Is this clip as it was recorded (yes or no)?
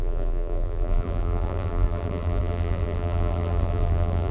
no